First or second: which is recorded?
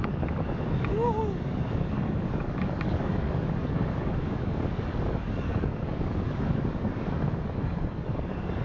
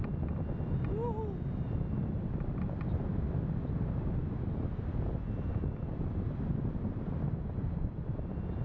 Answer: second